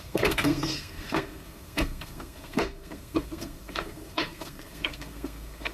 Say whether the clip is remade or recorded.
remade